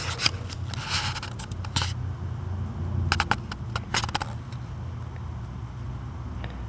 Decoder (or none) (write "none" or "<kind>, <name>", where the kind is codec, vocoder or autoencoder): none